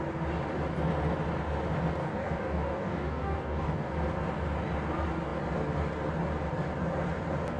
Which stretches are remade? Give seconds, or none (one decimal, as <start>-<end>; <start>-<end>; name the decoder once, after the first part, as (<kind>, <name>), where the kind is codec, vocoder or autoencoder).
2.0-3.9 (codec, DAC)

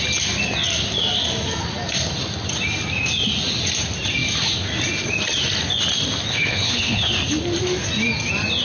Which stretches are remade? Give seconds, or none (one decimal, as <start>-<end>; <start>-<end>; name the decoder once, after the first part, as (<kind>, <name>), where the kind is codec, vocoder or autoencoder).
6.3-7.1 (codec, HILCodec)

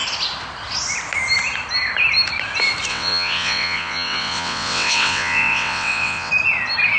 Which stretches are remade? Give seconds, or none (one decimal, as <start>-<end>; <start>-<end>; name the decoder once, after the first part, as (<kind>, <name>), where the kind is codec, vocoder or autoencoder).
2.9-6.3 (vocoder, WaveNeXt)

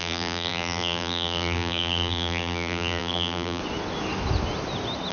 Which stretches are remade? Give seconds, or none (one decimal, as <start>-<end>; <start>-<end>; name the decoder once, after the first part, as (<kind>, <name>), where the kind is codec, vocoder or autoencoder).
0.0-3.6 (vocoder, BigVGAN v2)

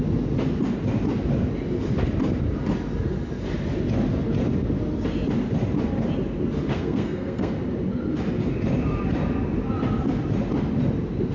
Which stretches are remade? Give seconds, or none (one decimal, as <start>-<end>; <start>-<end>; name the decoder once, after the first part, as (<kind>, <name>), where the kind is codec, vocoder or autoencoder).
6.7-7.5 (codec, SNAC)

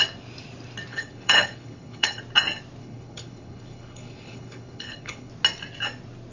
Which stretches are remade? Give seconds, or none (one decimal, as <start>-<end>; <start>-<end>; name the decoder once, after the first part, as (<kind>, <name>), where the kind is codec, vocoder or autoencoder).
0.9-2.2 (codec, HILCodec); 2.8-5.3

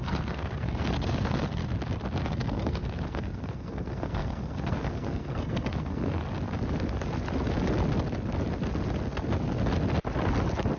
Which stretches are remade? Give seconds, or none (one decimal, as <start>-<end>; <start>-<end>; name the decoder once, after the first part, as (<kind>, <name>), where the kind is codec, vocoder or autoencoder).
0.0-1.6 (codec, SNAC); 2.3-6.2

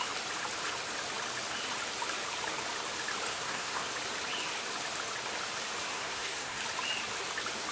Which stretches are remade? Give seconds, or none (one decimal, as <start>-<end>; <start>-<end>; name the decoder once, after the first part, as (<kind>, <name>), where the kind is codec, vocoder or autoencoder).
3.3-3.9 (codec, SNAC); 5.9-6.6